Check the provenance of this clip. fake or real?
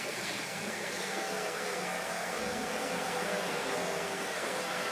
fake